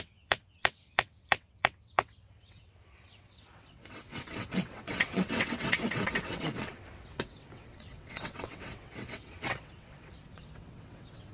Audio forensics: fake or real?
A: fake